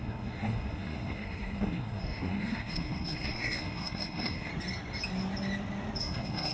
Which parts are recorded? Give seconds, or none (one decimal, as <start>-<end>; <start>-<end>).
4.5-6.0